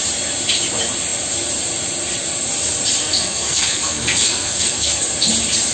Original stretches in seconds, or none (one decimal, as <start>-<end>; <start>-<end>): 0.0-3.0; 5.0-5.7